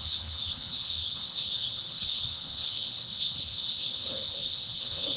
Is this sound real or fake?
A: fake